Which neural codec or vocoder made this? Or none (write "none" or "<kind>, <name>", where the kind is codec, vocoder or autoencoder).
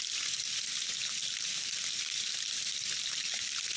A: none